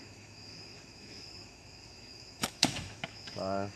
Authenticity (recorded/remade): remade